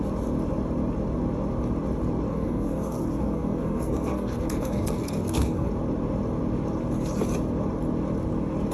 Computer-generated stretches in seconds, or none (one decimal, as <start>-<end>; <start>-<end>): 2.3-5.7